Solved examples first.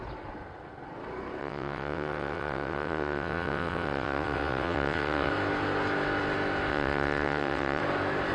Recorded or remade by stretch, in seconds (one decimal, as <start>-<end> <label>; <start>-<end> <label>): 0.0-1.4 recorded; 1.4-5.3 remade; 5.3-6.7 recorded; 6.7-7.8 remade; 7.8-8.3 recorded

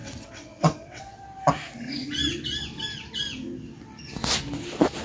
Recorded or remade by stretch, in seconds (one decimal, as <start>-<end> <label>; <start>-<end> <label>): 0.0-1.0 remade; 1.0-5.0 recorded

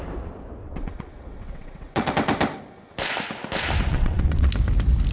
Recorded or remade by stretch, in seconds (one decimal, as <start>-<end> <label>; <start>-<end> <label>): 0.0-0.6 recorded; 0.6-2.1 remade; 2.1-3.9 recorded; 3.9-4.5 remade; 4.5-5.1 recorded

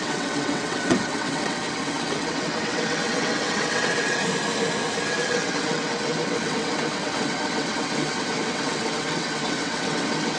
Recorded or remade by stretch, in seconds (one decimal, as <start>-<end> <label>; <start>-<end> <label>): 0.0-4.2 remade; 4.2-5.1 recorded; 5.1-10.4 remade

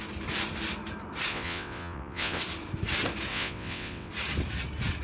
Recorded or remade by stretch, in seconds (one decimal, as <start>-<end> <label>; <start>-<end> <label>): 0.0-1.3 recorded; 1.3-2.4 remade; 2.4-3.3 recorded; 3.3-4.1 remade; 4.1-5.0 recorded